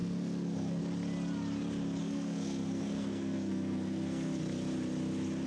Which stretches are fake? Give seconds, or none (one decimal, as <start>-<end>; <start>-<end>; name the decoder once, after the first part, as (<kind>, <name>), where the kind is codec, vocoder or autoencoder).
0.0-0.8 (codec, SNAC); 2.0-4.4